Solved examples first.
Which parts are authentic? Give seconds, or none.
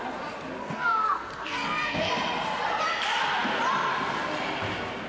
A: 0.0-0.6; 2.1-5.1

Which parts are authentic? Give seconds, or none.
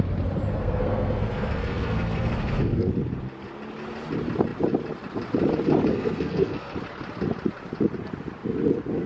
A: 0.0-0.5; 2.9-5.9; 6.7-9.1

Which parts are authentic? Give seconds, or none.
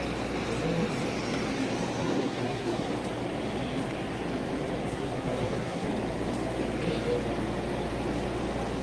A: 0.0-2.0; 2.9-4.8; 5.9-8.8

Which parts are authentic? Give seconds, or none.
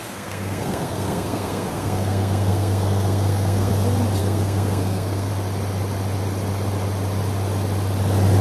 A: 3.7-4.2; 5.3-8.4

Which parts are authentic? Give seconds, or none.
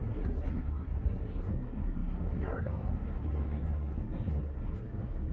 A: none